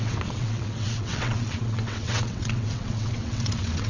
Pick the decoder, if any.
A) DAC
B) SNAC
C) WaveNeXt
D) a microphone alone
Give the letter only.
C